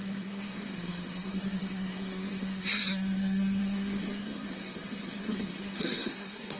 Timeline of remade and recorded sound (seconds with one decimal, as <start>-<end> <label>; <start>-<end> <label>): 0.0-6.6 remade

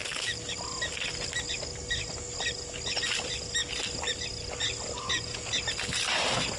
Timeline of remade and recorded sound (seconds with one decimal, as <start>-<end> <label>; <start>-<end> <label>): 0.0-6.6 recorded

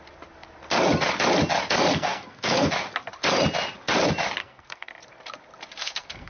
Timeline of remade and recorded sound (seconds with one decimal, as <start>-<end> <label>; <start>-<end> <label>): 0.0-1.9 recorded; 1.9-2.7 remade; 2.7-4.4 recorded; 4.4-4.9 remade; 4.9-5.8 recorded; 5.8-6.3 remade

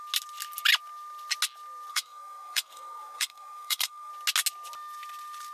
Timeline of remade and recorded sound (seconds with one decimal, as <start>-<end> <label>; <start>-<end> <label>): 0.0-1.9 recorded; 1.9-4.1 remade; 4.1-5.5 recorded